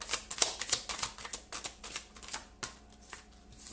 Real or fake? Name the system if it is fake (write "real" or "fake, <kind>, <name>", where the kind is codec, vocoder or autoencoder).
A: real